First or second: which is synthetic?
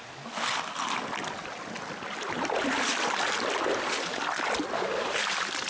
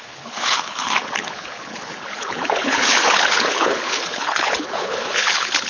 second